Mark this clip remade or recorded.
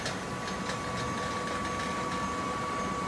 recorded